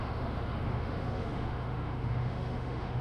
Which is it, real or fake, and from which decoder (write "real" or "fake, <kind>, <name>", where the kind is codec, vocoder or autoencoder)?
fake, autoencoder, DAC-VAE